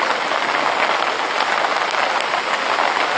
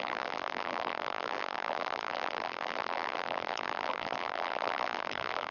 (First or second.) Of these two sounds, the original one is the first